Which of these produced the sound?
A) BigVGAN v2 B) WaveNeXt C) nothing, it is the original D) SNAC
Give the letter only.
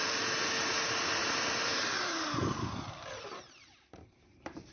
A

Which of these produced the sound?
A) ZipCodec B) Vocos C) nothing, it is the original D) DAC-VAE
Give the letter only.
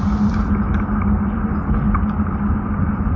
C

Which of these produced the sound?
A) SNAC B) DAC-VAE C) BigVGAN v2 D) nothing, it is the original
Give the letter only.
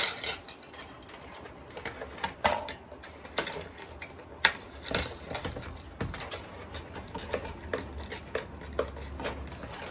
D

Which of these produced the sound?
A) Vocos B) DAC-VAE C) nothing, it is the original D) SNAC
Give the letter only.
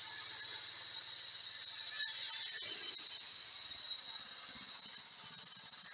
C